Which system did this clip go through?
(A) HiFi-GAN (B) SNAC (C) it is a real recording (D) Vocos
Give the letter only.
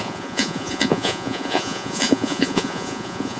D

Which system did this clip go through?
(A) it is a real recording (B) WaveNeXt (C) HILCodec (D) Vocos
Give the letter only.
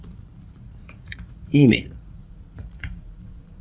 D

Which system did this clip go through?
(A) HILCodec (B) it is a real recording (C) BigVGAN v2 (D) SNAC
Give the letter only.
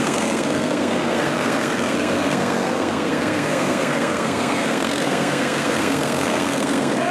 D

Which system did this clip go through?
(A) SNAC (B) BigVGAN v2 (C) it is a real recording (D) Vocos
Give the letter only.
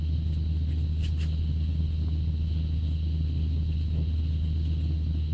C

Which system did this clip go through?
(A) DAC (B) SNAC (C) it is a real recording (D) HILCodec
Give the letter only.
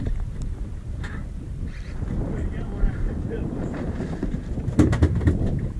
C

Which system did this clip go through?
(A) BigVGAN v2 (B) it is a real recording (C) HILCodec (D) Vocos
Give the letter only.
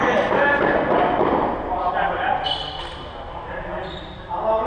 B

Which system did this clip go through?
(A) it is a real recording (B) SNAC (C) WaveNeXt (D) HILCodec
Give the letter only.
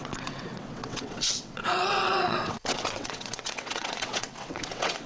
C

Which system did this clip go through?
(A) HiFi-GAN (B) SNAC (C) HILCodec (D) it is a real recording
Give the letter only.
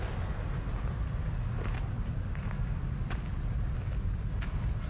D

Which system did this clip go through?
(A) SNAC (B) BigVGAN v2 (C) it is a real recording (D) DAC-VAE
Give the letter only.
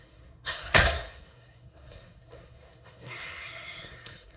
A